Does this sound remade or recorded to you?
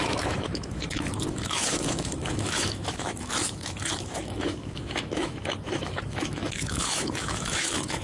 remade